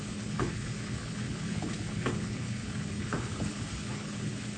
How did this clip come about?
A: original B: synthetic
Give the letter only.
B